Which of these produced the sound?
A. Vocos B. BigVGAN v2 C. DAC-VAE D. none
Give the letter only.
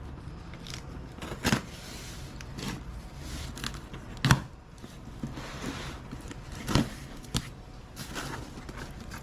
D